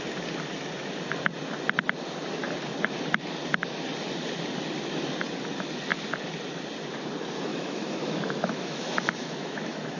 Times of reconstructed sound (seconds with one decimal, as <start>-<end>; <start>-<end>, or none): 7.5-10.0